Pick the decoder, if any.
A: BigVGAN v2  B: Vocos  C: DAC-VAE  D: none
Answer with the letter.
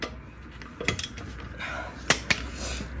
D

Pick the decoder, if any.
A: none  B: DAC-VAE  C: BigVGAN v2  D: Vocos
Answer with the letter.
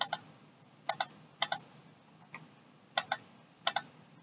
A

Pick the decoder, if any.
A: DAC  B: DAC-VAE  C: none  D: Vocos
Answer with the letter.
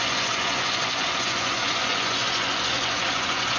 D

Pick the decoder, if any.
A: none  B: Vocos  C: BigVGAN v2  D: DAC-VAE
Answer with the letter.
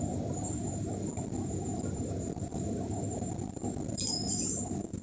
A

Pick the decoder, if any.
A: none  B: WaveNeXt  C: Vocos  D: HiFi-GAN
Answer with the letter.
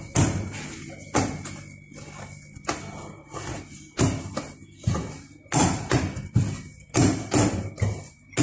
A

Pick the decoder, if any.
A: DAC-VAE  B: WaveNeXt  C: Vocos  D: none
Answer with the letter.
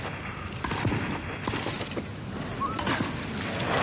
D